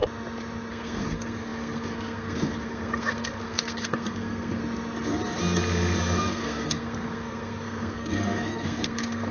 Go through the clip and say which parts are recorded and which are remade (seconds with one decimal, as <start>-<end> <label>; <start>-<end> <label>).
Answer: 0.0-0.7 recorded; 0.7-4.6 remade; 4.6-6.3 recorded; 6.3-9.3 remade